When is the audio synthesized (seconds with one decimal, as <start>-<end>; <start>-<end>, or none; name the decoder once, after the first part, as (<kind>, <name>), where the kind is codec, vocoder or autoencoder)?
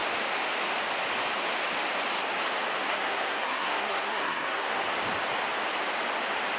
2.9-4.8 (codec, SNAC)